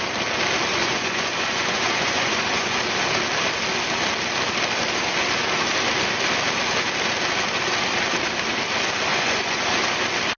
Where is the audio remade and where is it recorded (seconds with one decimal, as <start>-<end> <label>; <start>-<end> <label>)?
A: 0.0-0.7 recorded; 0.7-2.8 remade; 2.8-9.1 recorded; 9.1-9.6 remade; 9.6-10.4 recorded

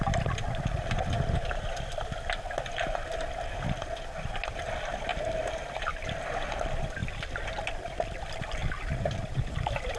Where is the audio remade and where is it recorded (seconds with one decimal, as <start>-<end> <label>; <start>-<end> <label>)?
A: 0.0-10.0 recorded

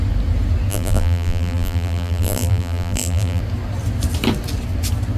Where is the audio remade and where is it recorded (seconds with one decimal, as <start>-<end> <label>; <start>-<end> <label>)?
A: 0.0-0.7 recorded; 0.7-3.4 remade; 3.4-5.2 recorded

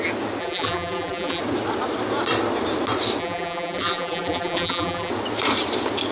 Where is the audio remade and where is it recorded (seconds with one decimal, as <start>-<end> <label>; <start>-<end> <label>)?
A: 0.0-0.4 recorded; 0.4-1.4 remade; 1.4-3.2 recorded; 3.2-5.1 remade; 5.1-6.1 recorded

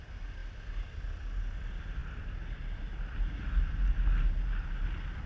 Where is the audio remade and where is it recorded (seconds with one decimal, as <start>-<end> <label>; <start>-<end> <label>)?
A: 0.0-5.3 recorded

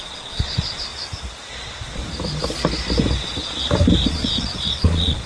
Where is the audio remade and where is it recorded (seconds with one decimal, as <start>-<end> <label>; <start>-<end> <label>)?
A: 0.0-0.9 remade; 0.9-1.5 recorded; 1.5-2.0 remade; 2.0-4.1 recorded; 4.1-5.3 remade

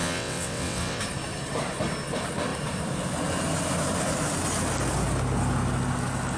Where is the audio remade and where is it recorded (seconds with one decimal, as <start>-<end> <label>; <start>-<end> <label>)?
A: 0.0-1.0 remade; 1.0-6.4 recorded